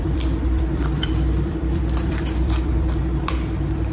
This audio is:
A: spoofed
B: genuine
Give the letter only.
A